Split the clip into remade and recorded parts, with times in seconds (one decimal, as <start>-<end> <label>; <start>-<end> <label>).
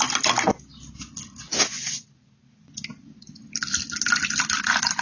0.0-5.0 recorded